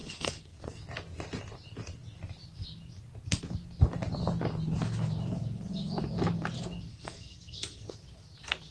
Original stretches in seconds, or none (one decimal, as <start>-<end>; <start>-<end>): 0.8-6.9; 7.9-8.7